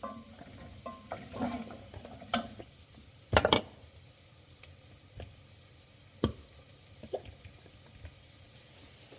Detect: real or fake fake